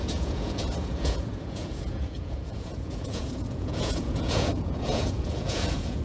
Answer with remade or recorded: remade